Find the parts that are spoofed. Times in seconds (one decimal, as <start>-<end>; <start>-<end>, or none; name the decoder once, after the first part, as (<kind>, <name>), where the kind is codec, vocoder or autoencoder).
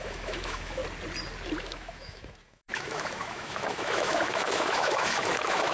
0.0-0.8 (autoencoder, DAC-VAE); 1.6-5.7